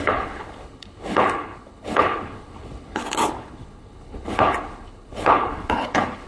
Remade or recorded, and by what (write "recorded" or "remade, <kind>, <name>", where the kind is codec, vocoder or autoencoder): remade, codec, HILCodec